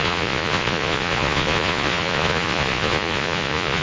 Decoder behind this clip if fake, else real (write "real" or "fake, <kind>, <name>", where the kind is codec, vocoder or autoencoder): fake, vocoder, Vocos